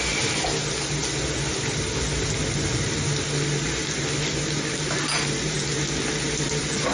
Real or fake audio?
real